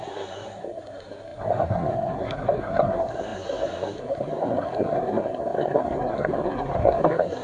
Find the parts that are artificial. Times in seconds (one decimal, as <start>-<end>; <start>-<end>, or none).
0.0-7.4